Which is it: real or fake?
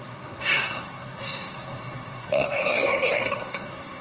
fake